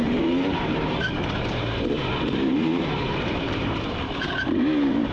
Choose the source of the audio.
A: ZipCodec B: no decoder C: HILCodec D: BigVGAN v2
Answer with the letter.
D